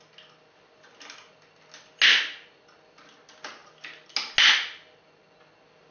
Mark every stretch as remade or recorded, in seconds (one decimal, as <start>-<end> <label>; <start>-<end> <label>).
0.0-5.9 recorded